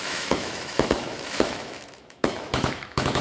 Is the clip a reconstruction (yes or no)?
yes